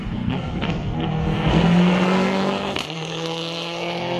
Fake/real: fake